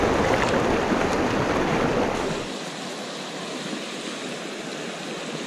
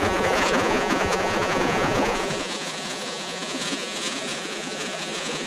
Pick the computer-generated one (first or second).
second